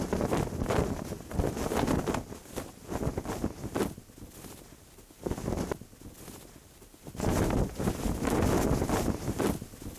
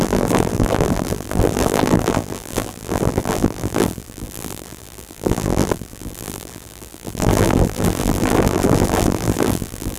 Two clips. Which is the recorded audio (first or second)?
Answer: first